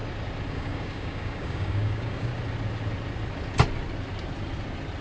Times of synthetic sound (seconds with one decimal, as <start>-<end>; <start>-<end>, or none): 0.5-2.3